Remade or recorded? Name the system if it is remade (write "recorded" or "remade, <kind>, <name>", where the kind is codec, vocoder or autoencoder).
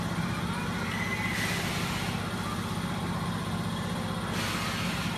recorded